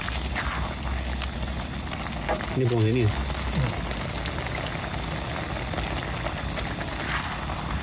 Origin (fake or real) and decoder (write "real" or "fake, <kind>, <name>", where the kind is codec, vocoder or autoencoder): real